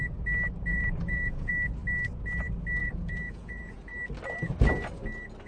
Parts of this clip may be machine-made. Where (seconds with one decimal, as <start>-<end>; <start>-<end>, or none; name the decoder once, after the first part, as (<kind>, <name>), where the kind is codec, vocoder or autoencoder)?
0.7-1.5 (vocoder, Vocos); 2.8-3.9